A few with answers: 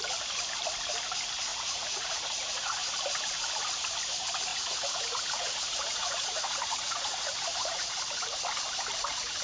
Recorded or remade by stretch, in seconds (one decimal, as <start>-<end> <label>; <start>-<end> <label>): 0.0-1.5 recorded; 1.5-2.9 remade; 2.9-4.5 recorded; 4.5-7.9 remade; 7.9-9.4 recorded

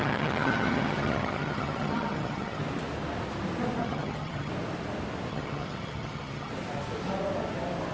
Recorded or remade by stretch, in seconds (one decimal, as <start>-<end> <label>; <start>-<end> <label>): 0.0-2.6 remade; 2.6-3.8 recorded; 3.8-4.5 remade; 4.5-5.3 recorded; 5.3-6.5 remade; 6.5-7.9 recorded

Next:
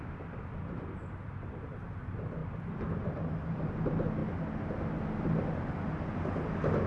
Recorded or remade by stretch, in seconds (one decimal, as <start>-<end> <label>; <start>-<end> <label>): 0.0-6.9 recorded

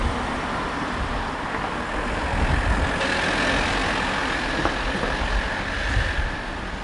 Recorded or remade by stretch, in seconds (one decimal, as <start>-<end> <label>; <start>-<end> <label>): 0.0-6.8 recorded

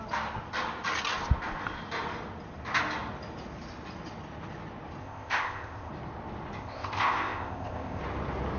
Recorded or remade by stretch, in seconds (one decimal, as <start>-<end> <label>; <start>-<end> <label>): 0.0-5.0 recorded; 5.0-5.9 remade; 5.9-6.6 recorded; 6.6-8.0 remade; 8.0-8.6 recorded

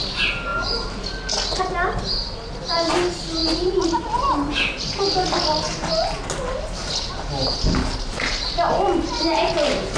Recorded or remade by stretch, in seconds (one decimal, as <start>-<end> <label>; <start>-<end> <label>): 0.0-10.0 recorded